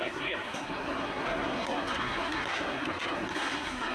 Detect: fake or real fake